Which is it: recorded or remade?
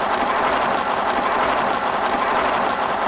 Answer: recorded